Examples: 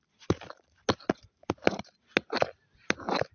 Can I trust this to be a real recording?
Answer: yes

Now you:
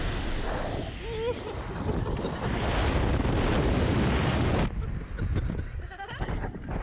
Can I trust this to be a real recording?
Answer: yes